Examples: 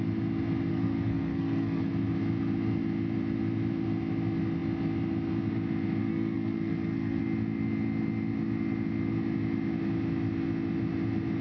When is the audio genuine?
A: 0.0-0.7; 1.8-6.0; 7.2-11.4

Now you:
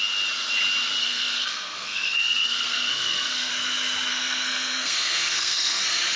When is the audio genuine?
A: 0.0-1.0; 3.5-4.1; 5.8-6.2

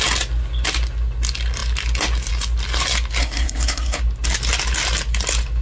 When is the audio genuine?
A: 0.0-3.2; 4.0-5.6

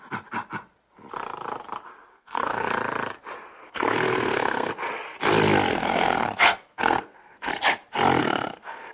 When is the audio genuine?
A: 0.0-2.1; 2.7-3.5; 4.7-5.7; 7.5-8.2

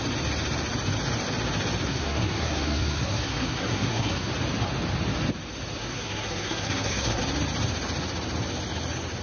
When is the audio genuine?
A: 0.0-1.9; 4.3-5.8; 7.2-9.2

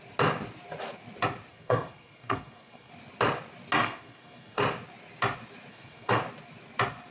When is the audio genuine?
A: 0.0-1.5; 2.9-3.8; 4.6-5.7; 6.2-7.1

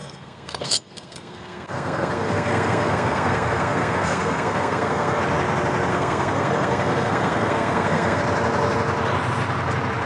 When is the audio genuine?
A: 5.2-5.9; 8.2-10.1